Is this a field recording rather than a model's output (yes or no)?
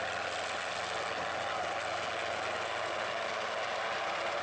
yes